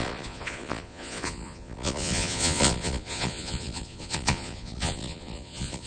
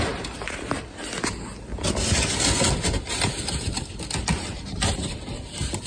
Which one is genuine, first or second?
second